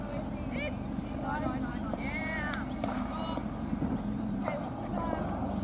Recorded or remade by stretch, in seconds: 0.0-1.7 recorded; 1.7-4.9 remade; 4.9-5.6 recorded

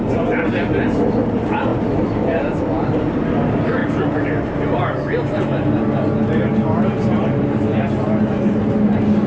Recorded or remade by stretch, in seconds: 0.0-1.7 recorded; 1.7-3.0 remade; 3.0-9.3 recorded

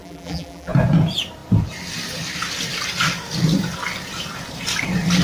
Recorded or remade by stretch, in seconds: 0.0-0.7 remade; 0.7-5.2 recorded

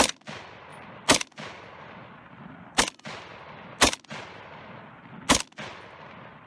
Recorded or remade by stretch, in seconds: 0.0-6.5 recorded

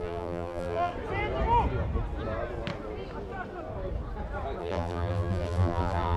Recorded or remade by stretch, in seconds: 0.0-0.9 remade; 0.9-4.6 recorded; 4.6-6.2 remade

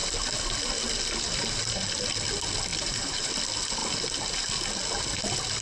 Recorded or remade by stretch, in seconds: 0.0-2.7 recorded; 2.7-3.3 remade; 3.3-5.6 recorded